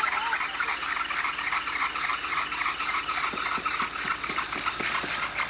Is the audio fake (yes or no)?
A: no